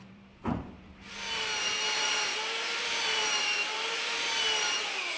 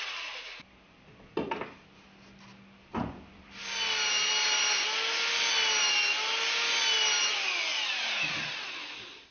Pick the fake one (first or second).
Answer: first